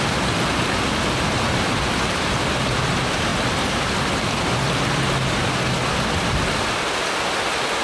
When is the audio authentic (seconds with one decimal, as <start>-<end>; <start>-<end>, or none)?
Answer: 0.0-7.8